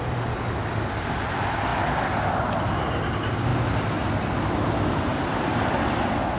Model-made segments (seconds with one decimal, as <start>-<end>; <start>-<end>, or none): 5.1-5.6